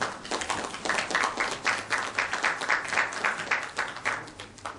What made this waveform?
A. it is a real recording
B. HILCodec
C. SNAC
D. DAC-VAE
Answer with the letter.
A